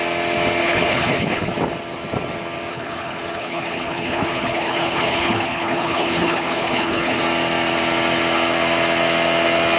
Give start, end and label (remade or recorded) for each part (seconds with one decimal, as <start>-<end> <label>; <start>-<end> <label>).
0.0-0.6 recorded; 0.6-1.5 remade; 1.5-2.7 recorded; 2.7-7.2 remade; 7.2-9.8 recorded